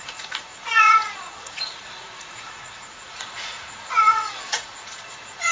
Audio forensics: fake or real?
fake